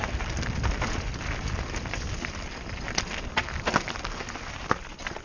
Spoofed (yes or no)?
no